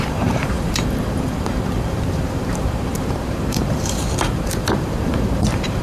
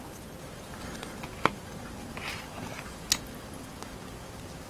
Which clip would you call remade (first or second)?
first